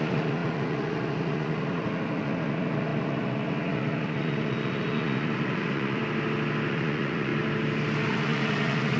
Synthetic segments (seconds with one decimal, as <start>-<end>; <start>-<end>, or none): 0.0-6.0; 6.7-7.3; 8.1-9.0